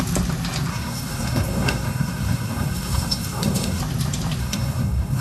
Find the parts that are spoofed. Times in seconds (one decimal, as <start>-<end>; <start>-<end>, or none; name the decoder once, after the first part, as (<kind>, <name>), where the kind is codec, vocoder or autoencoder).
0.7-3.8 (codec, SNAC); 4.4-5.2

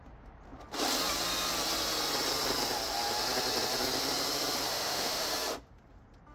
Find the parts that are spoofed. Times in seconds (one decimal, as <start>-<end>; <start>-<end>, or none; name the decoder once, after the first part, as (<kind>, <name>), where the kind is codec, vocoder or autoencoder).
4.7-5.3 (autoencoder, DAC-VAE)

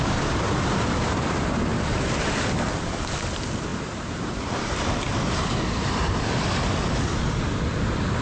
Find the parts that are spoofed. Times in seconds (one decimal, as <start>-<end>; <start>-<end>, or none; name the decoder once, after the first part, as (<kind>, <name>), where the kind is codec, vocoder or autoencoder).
0.0-8.2 (vocoder, BigVGAN v2)